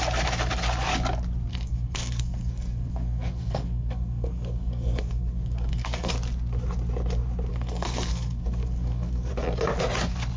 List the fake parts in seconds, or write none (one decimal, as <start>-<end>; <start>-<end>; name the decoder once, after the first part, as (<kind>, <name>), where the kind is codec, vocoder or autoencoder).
1.5-6.1 (codec, SNAC); 7.5-9.3